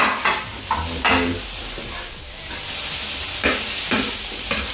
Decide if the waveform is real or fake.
real